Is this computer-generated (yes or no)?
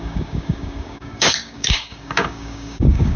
yes